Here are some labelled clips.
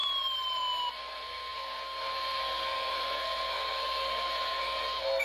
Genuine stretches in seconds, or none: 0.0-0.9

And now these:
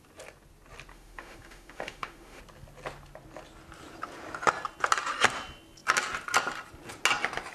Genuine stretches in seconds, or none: 0.0-0.9; 2.4-7.5